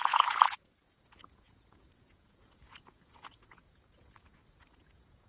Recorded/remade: remade